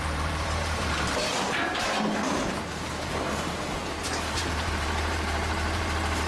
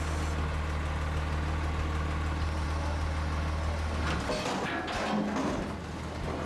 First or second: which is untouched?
second